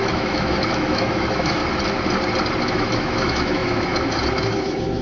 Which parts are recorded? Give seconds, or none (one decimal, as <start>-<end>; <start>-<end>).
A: 1.6-2.6